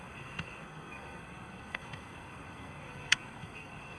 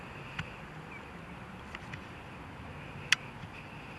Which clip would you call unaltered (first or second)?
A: second